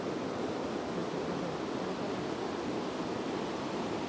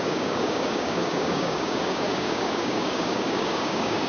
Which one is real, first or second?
first